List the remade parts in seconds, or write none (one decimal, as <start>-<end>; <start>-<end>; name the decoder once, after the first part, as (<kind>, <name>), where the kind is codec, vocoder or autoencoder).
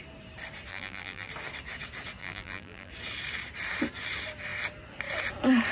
0.7-1.3 (vocoder, BigVGAN v2); 2.2-2.9